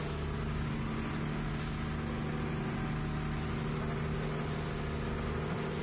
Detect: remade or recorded recorded